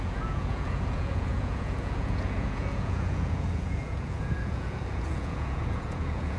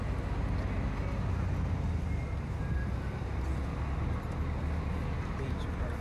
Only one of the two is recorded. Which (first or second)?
second